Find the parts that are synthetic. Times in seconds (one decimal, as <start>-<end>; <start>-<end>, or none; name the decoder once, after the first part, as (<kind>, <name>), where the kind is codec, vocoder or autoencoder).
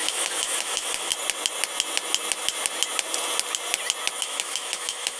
0.0-1.1 (autoencoder, DAC-VAE); 4.2-5.2